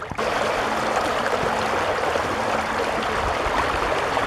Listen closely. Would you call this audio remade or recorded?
recorded